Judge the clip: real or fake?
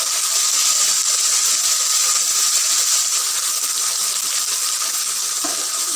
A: real